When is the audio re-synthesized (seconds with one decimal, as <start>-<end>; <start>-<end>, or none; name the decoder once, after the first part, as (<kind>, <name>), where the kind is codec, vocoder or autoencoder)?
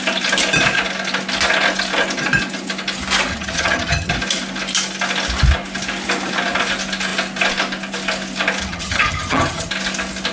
3.3-4.1 (vocoder, HiFi-GAN); 8.6-9.7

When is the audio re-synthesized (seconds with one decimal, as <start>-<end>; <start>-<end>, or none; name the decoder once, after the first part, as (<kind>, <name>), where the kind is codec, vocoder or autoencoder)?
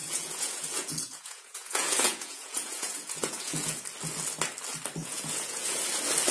0.0-3.8 (vocoder, Vocos); 5.0-5.8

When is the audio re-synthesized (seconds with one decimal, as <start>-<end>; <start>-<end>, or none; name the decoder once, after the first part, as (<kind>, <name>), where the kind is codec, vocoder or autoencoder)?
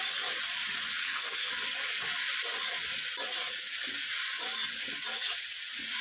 1.0-1.5 (codec, SNAC)